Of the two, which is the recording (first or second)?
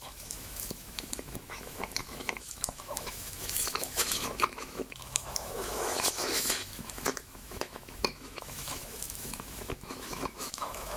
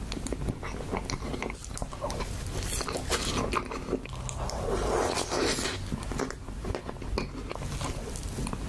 second